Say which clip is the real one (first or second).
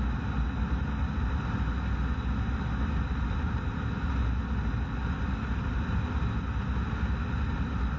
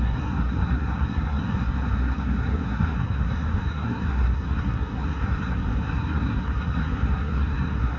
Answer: first